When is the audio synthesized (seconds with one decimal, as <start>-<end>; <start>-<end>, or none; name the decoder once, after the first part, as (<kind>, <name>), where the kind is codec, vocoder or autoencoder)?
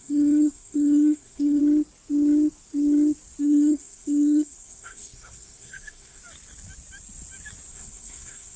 0.0-1.6 (codec, SNAC); 3.4-6.2; 7.7-8.6